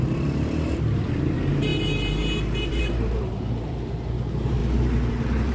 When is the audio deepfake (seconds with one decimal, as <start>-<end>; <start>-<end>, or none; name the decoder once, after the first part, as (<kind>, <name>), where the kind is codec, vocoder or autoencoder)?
0.0-1.7 (vocoder, BigVGAN v2); 2.7-4.6; 5.1-5.5